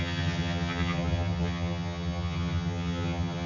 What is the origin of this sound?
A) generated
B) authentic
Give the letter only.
A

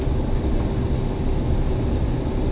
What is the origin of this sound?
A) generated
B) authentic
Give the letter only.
B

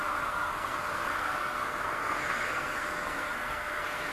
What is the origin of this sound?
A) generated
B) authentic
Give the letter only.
A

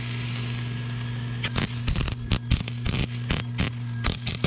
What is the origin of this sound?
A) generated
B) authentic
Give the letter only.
B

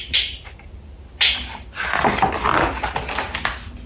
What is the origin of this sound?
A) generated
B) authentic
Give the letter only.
B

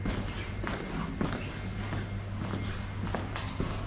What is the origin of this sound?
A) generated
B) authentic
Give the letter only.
B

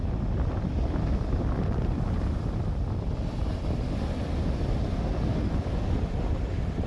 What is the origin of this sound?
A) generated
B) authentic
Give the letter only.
B